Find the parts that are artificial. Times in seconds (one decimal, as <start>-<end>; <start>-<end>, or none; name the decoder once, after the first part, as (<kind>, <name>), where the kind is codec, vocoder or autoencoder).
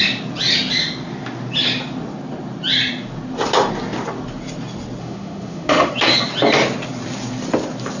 5.0-5.9 (autoencoder, DAC-VAE)